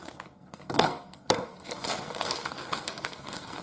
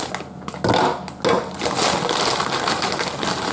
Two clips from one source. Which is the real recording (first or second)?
second